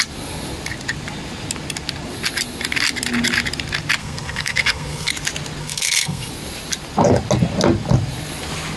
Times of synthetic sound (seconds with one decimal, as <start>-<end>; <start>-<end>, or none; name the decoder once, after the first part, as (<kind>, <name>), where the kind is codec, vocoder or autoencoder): 4.0-5.1 (codec, SNAC); 5.6-6.3